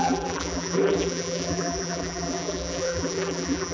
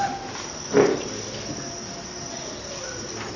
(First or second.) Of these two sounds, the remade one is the first